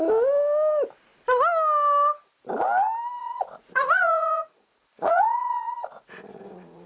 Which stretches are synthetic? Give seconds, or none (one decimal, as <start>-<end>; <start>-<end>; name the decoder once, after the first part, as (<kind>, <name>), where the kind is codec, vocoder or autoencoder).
3.2-6.9 (vocoder, Vocos)